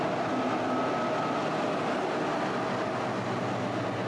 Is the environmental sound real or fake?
real